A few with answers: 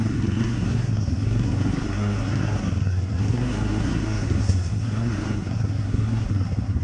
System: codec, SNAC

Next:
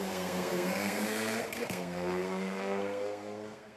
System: codec, SNAC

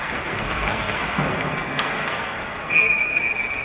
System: codec, SNAC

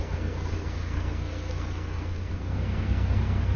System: codec, SNAC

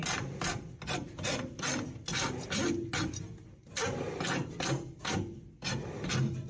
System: none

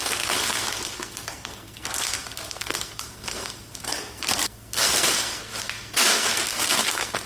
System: codec, SNAC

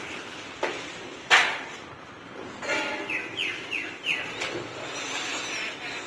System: none